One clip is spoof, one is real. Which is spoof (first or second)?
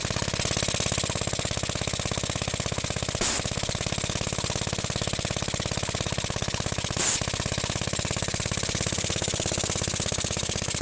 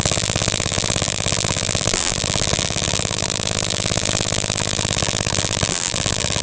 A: second